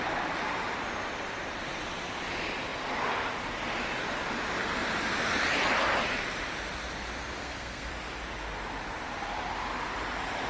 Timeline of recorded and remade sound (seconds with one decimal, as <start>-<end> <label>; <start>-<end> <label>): 0.0-7.4 recorded; 7.4-7.9 remade; 7.9-10.5 recorded